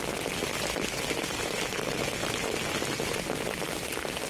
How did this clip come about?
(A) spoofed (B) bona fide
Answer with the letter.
B